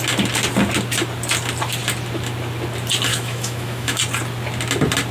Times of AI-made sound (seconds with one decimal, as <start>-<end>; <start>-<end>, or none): 3.1-4.0